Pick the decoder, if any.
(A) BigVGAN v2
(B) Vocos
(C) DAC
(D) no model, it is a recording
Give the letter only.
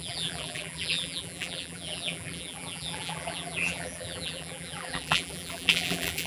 A